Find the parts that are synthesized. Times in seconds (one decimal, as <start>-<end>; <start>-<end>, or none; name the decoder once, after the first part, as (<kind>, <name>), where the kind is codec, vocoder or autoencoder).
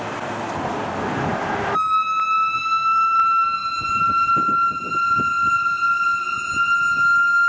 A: 2.6-3.2 (codec, SNAC)